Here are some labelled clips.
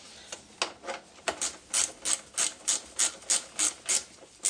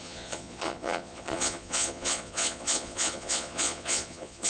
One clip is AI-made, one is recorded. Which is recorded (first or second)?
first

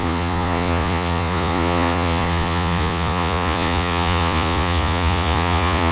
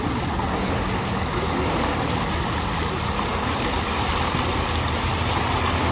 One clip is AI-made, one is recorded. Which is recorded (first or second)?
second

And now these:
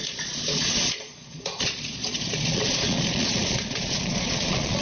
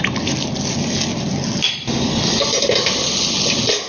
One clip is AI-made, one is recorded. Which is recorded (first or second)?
second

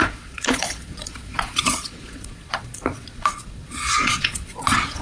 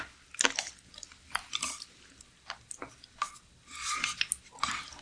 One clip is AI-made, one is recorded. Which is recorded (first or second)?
second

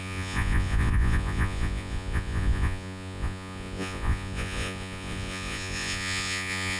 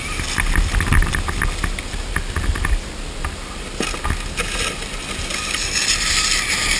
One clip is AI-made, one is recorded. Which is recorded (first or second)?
second